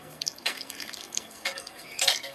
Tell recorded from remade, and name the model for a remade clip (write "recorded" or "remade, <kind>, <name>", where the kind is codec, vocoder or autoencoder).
remade, codec, SNAC